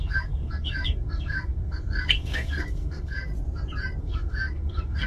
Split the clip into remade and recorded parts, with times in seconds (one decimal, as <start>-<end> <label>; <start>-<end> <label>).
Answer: 0.0-3.3 remade; 3.3-4.0 recorded; 4.0-5.1 remade